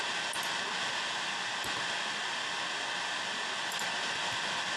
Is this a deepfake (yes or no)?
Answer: no